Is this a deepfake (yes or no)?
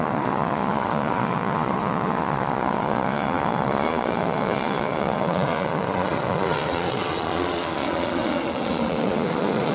yes